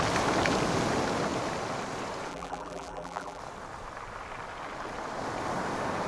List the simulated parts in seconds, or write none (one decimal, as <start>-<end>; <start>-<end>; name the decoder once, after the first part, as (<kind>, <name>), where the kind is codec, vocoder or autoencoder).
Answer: 2.3-3.4 (vocoder, BigVGAN v2)